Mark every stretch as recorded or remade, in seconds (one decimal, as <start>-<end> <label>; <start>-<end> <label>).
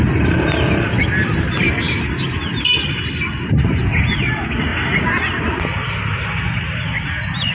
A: 0.0-7.5 recorded